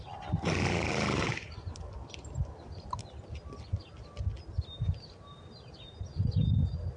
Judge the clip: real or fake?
real